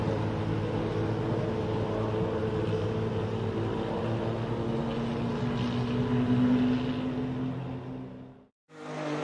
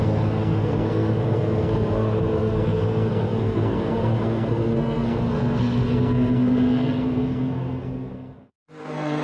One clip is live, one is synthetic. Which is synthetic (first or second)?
second